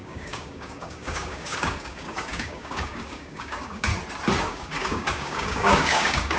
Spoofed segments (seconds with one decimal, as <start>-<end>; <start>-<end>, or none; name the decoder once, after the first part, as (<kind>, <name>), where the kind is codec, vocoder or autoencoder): 0.0-3.9 (codec, DAC); 4.4-6.4